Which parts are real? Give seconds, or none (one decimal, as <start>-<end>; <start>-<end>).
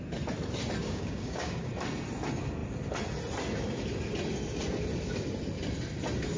0.0-0.8; 1.7-6.4